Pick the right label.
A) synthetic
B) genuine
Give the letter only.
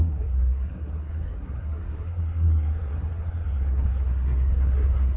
A